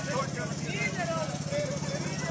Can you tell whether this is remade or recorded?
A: recorded